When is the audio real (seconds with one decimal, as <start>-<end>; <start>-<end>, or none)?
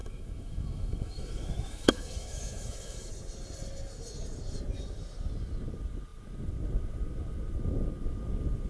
3.1-8.7